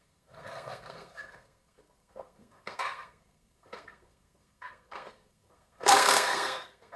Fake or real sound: fake